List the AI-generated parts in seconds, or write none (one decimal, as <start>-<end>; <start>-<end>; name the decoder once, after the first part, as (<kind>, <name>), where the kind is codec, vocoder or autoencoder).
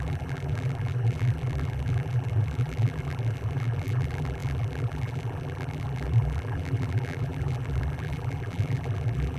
0.0-9.4 (vocoder, BigVGAN v2)